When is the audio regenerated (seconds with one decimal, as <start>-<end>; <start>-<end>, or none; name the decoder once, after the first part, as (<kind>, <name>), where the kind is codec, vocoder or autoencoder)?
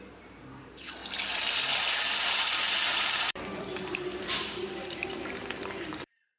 0.0-1.0 (vocoder, BigVGAN v2); 1.7-6.4